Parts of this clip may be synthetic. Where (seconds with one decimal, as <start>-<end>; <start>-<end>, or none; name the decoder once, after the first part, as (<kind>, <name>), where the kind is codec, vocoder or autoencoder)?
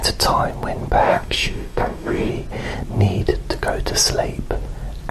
1.0-2.3 (codec, DAC)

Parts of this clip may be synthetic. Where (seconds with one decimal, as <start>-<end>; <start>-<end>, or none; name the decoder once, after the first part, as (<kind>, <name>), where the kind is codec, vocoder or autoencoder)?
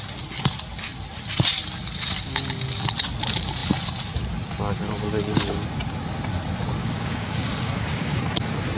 6.8-8.2 (codec, DAC)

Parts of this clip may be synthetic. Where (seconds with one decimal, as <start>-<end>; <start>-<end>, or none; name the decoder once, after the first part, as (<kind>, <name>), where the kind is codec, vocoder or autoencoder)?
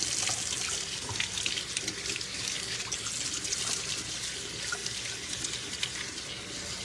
2.3-2.8 (codec, DAC)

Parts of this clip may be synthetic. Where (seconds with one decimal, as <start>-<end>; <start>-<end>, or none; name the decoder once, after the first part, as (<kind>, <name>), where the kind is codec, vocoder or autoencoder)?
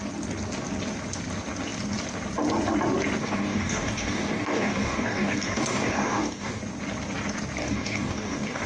3.2-6.6 (codec, DAC); 7.6-8.7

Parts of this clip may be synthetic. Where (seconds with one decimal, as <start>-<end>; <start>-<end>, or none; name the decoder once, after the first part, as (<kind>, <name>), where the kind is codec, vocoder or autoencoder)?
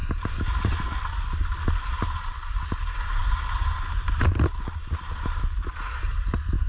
none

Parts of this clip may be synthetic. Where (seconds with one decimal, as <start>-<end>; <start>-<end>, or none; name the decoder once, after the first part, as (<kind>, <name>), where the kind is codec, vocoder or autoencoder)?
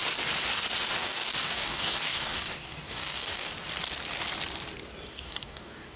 1.0-3.5 (codec, DAC); 5.1-6.0